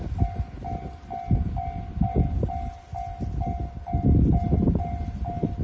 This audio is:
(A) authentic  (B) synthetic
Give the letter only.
A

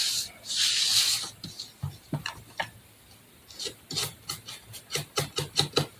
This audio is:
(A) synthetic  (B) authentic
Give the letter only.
B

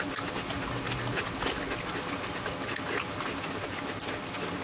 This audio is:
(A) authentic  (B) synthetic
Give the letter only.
A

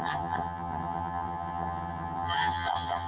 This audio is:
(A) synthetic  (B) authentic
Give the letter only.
A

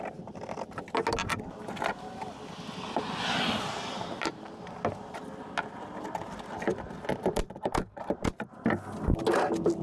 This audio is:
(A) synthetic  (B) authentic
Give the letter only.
B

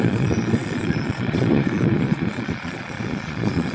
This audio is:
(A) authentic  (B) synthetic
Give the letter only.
B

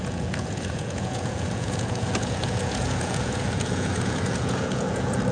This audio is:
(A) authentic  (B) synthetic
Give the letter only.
B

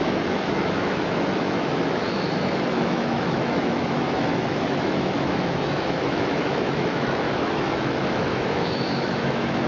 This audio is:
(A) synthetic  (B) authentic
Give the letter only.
A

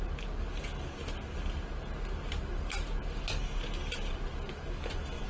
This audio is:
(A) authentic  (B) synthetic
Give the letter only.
A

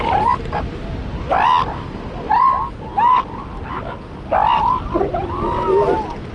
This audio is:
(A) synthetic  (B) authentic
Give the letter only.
B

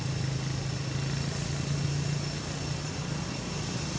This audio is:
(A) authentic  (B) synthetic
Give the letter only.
A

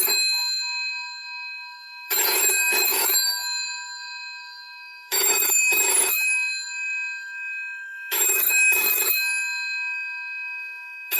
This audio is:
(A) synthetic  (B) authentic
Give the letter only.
A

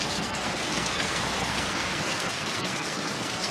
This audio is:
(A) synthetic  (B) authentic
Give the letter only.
A